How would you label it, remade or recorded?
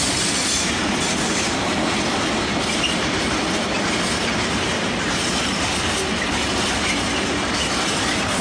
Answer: recorded